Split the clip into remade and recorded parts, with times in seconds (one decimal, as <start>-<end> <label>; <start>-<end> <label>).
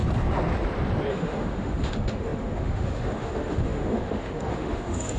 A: 0.0-1.1 recorded; 1.1-5.2 remade